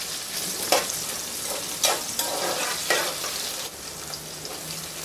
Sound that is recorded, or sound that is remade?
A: recorded